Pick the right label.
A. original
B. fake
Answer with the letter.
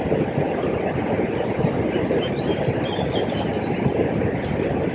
A